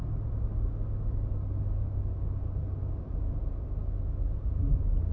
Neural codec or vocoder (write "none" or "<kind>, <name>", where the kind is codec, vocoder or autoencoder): none